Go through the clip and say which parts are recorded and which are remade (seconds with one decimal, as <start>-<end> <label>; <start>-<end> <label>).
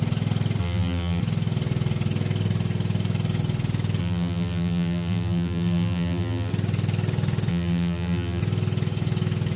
0.0-0.6 recorded; 0.6-1.2 remade; 1.2-4.0 recorded; 4.0-6.5 remade; 6.5-7.5 recorded; 7.5-8.4 remade; 8.4-9.6 recorded